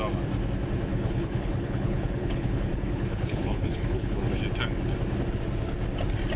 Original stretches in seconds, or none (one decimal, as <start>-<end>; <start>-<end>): 0.0-0.9; 4.4-6.4

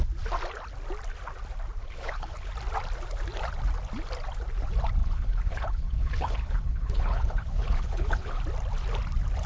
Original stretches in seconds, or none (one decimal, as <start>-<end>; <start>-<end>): 0.0-1.8; 2.5-5.0; 8.4-9.5

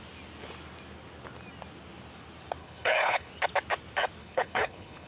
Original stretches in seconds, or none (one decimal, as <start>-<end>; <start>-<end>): 0.0-2.6; 3.3-4.2

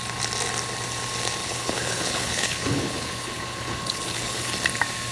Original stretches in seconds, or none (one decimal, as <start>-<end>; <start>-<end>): 0.0-1.4; 4.5-5.1

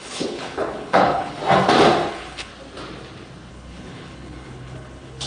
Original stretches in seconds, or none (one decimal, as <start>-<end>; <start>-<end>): 1.4-2.1; 2.5-3.5